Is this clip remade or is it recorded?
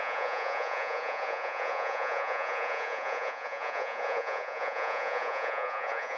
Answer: remade